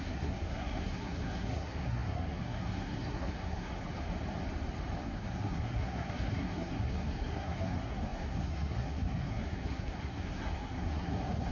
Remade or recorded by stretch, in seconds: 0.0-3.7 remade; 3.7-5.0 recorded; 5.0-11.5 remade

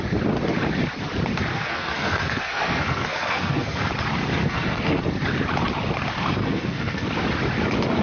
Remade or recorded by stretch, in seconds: 0.0-1.5 recorded; 1.5-3.9 remade; 3.9-4.4 recorded; 4.4-5.0 remade; 5.0-6.4 recorded; 6.4-7.1 remade; 7.1-8.0 recorded